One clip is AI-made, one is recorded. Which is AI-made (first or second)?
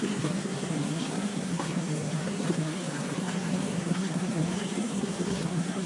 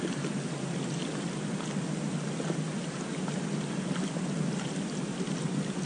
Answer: first